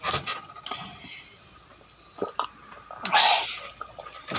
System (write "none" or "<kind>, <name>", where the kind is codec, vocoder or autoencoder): none